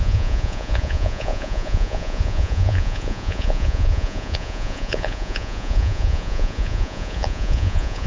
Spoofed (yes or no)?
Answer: yes